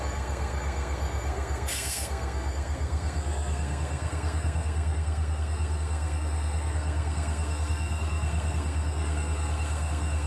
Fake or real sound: fake